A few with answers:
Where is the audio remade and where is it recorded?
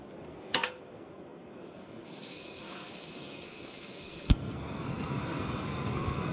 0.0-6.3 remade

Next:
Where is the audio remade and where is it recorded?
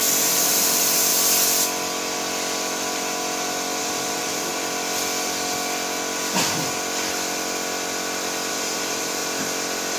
0.0-1.1 remade; 1.1-3.8 recorded; 3.8-4.5 remade; 4.5-8.5 recorded; 8.5-9.2 remade; 9.2-10.0 recorded